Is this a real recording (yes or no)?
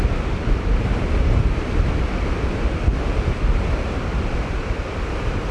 no